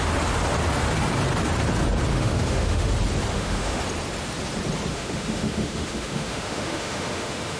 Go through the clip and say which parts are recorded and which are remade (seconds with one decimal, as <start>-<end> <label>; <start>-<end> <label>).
0.0-2.1 recorded; 2.1-2.9 remade; 2.9-3.3 recorded; 3.3-3.8 remade; 3.8-4.9 recorded; 4.9-7.6 remade